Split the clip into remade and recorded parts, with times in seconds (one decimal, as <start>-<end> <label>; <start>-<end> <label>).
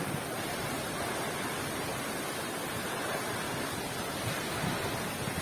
0.0-5.4 recorded